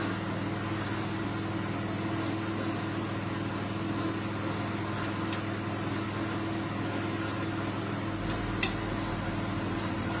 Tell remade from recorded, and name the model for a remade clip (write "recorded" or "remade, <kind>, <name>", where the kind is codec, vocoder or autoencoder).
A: recorded